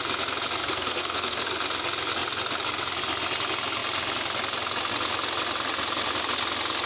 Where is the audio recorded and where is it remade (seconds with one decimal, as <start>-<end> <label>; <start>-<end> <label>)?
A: 0.0-0.6 recorded; 0.6-1.6 remade; 1.6-6.9 recorded